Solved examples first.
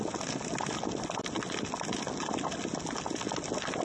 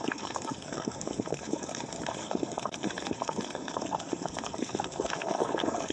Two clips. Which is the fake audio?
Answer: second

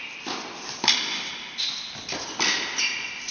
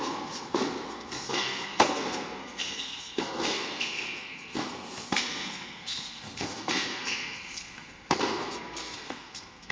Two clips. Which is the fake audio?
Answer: second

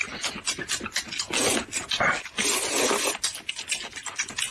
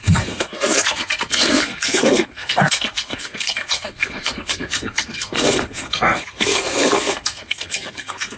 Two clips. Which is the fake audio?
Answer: second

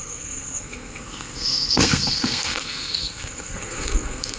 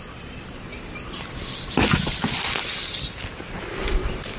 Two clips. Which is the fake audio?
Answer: first